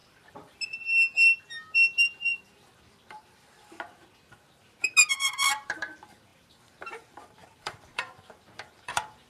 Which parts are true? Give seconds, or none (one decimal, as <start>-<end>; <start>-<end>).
0.0-5.1